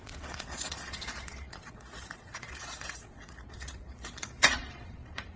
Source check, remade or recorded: remade